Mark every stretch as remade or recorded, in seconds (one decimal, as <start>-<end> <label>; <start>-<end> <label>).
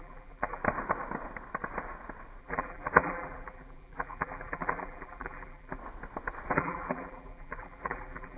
0.0-0.6 remade; 0.6-2.4 recorded; 2.4-5.8 remade; 5.8-6.5 recorded; 6.5-8.4 remade